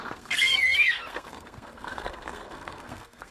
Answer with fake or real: fake